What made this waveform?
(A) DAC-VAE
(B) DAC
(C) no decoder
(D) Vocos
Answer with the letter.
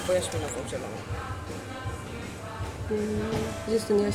C